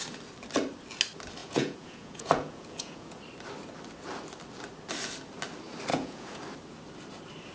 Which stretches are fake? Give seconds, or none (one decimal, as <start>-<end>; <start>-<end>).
1.4-3.2; 5.9-6.4